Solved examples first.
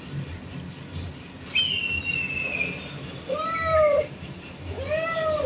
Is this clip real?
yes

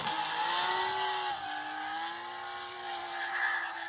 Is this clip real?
yes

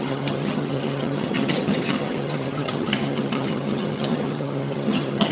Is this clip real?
no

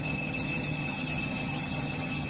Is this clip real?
no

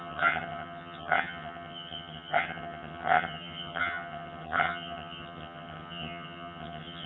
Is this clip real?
no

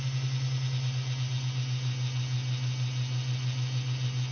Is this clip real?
yes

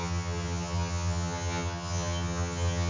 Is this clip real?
no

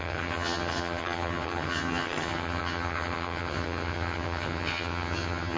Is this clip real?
no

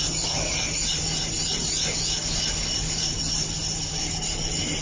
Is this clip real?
yes